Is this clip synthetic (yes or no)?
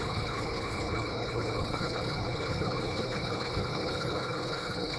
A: yes